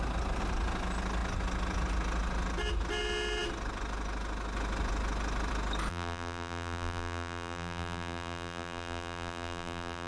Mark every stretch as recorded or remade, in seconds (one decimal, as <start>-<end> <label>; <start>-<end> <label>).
0.0-5.9 recorded; 5.9-10.1 remade